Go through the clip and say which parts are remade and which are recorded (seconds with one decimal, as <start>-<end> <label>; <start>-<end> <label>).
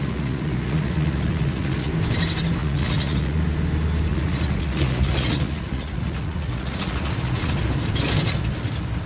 0.0-1.9 remade; 1.9-2.6 recorded; 2.6-3.4 remade; 3.4-4.1 recorded; 4.1-7.5 remade; 7.5-9.1 recorded